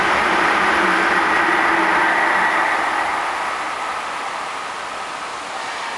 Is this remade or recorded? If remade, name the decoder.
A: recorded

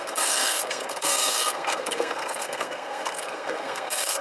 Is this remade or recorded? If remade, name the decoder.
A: remade, codec, SNAC